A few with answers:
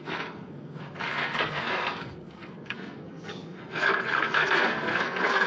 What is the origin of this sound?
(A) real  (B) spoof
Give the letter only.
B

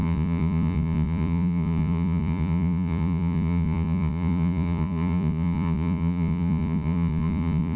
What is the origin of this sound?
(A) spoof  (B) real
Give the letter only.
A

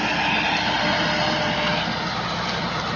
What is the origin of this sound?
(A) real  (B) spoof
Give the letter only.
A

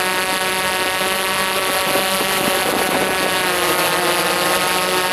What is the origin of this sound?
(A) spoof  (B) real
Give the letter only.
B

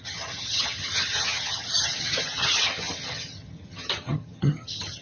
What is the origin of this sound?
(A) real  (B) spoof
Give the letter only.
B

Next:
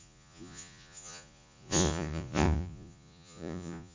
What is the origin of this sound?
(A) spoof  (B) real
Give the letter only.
A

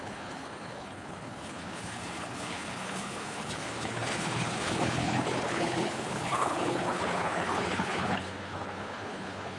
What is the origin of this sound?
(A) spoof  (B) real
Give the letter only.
A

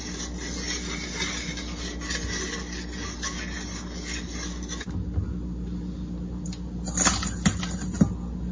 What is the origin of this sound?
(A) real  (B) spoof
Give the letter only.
A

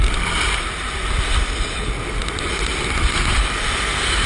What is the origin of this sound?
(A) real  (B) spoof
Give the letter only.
A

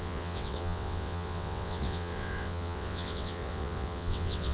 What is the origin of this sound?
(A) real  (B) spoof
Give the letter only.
B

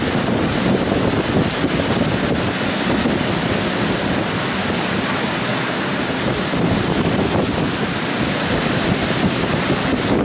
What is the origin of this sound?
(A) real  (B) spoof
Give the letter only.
A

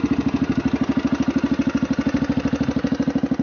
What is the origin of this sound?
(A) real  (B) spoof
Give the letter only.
A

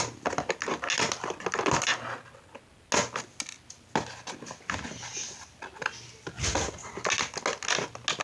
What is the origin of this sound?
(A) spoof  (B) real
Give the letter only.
B